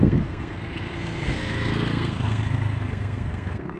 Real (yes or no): no